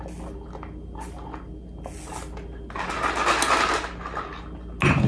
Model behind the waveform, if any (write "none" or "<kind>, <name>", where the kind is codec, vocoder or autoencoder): none